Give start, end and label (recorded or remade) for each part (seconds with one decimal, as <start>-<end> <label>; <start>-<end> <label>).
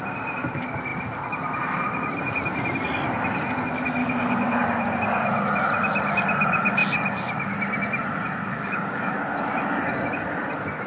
0.0-4.0 recorded; 4.0-4.6 remade; 4.6-8.5 recorded; 8.5-9.1 remade; 9.1-10.9 recorded